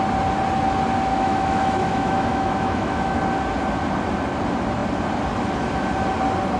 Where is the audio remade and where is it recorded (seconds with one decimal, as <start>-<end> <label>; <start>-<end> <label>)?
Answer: 0.0-1.1 recorded; 1.1-3.2 remade; 3.2-6.6 recorded